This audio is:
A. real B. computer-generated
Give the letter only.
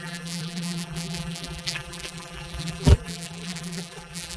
B